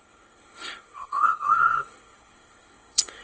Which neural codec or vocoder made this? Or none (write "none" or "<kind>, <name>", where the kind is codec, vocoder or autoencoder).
codec, SNAC